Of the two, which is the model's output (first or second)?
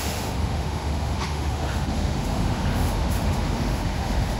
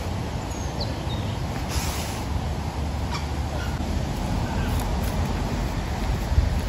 first